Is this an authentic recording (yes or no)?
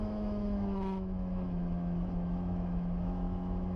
no